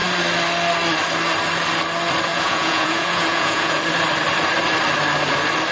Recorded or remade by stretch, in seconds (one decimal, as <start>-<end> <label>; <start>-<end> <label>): 0.0-2.3 recorded; 2.3-3.8 remade; 3.8-5.7 recorded

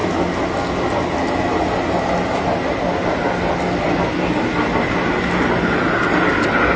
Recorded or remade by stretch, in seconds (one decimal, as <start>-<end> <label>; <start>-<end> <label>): 0.0-6.8 recorded

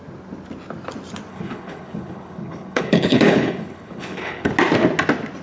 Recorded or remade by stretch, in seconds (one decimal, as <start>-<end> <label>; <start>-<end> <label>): 0.0-1.3 recorded; 1.3-4.5 remade; 4.5-5.4 recorded